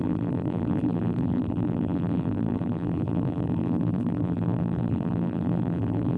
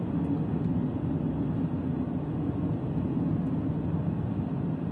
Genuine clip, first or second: second